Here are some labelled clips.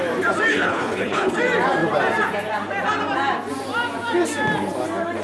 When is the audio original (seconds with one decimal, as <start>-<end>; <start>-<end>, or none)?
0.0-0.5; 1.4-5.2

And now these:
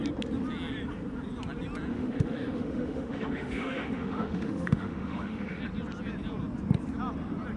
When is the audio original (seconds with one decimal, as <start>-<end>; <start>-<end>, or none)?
0.0-1.9; 5.6-7.6

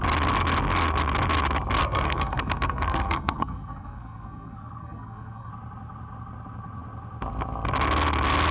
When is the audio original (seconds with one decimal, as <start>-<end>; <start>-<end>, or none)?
0.0-1.8; 5.5-8.5

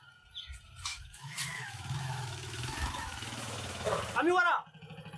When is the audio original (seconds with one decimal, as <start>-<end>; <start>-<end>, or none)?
0.0-0.9; 4.0-5.2